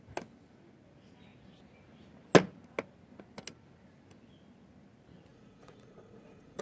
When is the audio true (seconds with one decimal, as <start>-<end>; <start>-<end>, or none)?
0.0-5.3